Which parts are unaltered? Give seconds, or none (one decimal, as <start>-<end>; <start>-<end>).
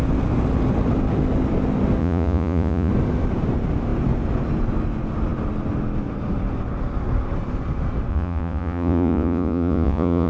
0.0-2.0; 2.9-8.1